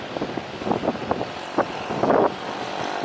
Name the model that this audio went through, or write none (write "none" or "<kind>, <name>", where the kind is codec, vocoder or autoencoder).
none